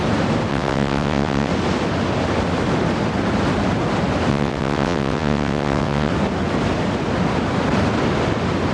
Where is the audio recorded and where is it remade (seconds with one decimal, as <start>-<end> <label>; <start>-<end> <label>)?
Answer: 0.0-0.5 recorded; 0.5-1.5 remade; 1.5-4.3 recorded; 4.3-6.1 remade; 6.1-8.7 recorded

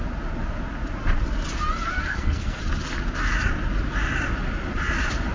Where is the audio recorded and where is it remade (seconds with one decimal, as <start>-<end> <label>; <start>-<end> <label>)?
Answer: 0.0-2.1 recorded; 2.1-2.6 remade; 2.6-5.3 recorded

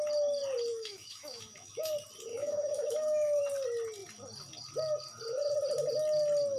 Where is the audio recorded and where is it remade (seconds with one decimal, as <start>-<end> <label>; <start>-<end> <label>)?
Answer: 0.0-0.7 recorded; 0.7-1.9 remade; 1.9-2.3 recorded; 2.3-3.4 remade; 3.4-6.6 recorded

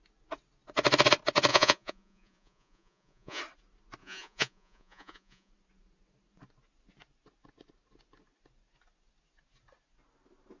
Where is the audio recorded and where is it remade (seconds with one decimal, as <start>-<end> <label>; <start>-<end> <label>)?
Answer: 0.0-1.5 recorded; 1.5-3.4 remade; 3.4-4.0 recorded; 4.0-5.5 remade; 5.5-10.6 recorded

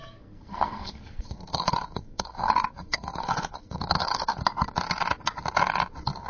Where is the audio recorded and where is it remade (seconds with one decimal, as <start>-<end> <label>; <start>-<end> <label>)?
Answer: 0.0-4.4 remade; 4.4-6.3 recorded

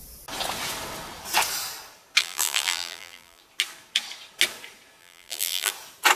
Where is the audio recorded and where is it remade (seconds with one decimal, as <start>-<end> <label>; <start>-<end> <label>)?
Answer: 0.0-2.2 recorded; 2.2-3.4 remade; 3.4-5.0 recorded; 5.0-5.7 remade; 5.7-6.2 recorded

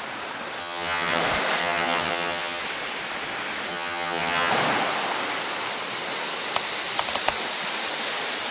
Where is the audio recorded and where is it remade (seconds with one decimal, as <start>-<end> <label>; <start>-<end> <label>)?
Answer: 0.0-0.6 recorded; 0.6-1.2 remade; 1.2-1.6 recorded; 1.6-2.6 remade; 2.6-3.7 recorded; 3.7-4.5 remade; 4.5-8.5 recorded